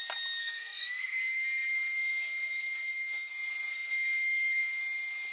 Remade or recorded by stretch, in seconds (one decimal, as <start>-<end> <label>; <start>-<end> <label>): 0.0-0.4 recorded; 0.4-3.3 remade; 3.3-3.7 recorded; 3.7-4.8 remade; 4.8-5.3 recorded

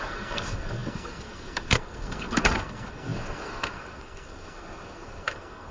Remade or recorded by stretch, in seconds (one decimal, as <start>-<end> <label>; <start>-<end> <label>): 0.0-5.7 remade

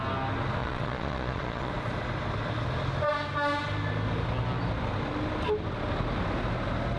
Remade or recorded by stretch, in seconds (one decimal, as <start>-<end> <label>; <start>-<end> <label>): 0.0-0.6 recorded; 0.6-1.7 remade; 1.7-7.0 recorded

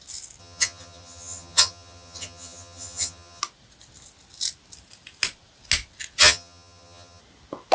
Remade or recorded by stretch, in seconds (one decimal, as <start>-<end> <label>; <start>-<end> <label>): 0.0-0.4 recorded; 0.4-3.4 remade; 3.4-6.2 recorded; 6.2-7.2 remade; 7.2-7.7 recorded

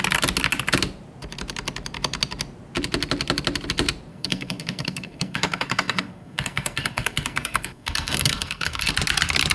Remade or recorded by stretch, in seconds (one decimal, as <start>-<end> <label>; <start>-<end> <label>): 0.0-4.1 recorded; 4.1-8.9 remade; 8.9-9.5 recorded